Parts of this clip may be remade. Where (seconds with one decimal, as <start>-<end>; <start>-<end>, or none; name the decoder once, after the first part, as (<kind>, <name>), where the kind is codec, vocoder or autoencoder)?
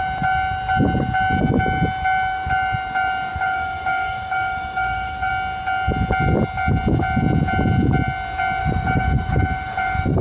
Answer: 3.3-5.3 (autoencoder, DAC-VAE); 8.6-10.2